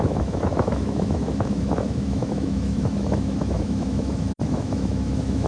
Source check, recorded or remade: remade